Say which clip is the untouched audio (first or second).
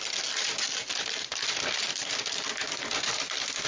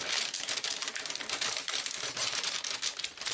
first